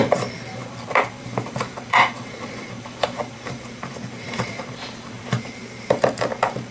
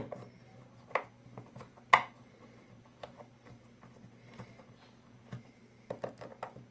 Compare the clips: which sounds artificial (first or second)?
first